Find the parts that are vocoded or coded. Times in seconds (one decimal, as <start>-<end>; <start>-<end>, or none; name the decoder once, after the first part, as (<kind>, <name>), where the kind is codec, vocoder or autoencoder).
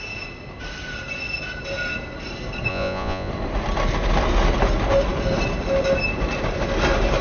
2.7-3.3 (vocoder, Vocos)